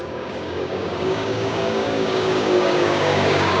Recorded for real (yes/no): no